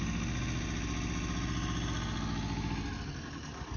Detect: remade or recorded recorded